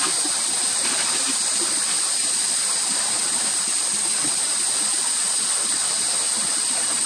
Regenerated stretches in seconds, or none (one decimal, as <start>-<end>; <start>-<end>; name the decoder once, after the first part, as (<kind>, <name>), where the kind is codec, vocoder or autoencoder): none